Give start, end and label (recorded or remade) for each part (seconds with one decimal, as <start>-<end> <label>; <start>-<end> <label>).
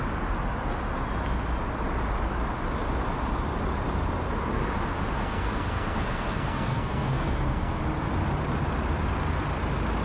0.0-5.2 recorded; 5.2-7.8 remade; 7.8-10.0 recorded